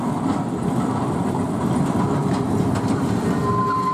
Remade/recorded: recorded